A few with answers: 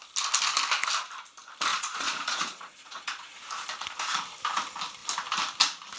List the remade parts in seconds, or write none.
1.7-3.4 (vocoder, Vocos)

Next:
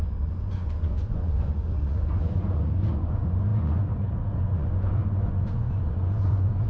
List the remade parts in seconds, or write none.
0.0-6.7 (vocoder, Vocos)

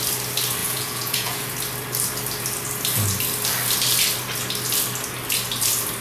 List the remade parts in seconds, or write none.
0.6-1.5 (vocoder, Vocos)